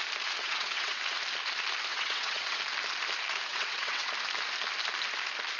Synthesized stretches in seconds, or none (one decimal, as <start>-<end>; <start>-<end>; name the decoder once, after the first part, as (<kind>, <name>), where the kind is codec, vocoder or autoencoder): 0.4-1.0 (vocoder, WaveNeXt); 1.9-2.6; 3.5-4.1